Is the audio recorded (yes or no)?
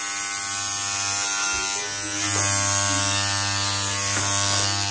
yes